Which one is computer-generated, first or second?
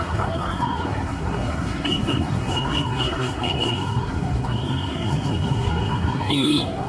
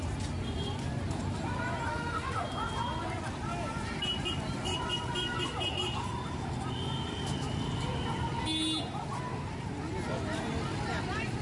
first